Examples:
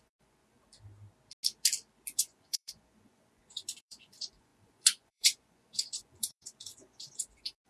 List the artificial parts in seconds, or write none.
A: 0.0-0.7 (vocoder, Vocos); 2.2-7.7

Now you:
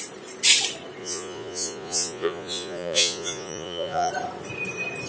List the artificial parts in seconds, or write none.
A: 1.0-4.1 (vocoder, Vocos)

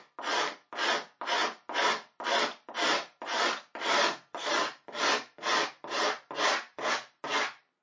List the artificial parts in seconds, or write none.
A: none